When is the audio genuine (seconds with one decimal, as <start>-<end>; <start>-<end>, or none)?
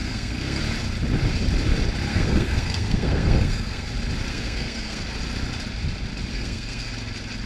0.6-2.1; 3.9-4.3; 5.0-6.3; 6.9-7.5